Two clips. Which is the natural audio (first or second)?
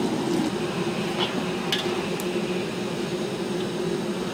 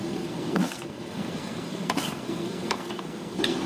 first